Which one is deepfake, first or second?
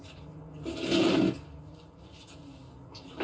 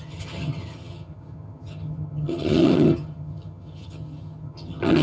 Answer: second